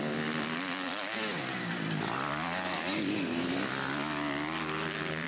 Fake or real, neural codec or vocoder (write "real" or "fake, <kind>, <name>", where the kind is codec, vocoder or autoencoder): real